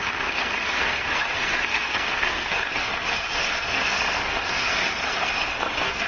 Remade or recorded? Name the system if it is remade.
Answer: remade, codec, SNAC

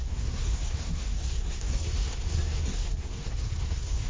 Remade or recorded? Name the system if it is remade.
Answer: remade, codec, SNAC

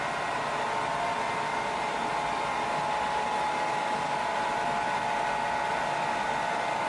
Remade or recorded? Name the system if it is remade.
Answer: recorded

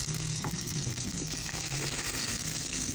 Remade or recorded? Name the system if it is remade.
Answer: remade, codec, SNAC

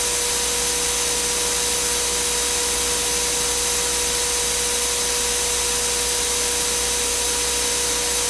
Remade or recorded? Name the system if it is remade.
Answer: recorded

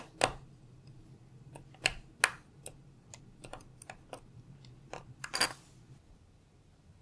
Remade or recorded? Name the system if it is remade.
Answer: recorded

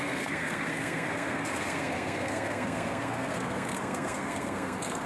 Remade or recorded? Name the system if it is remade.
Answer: remade, codec, SNAC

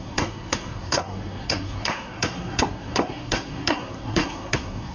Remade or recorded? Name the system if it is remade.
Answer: remade, codec, SNAC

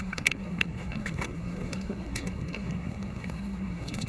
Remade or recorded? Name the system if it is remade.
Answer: remade, codec, SNAC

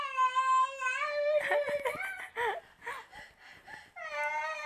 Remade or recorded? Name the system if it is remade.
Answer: recorded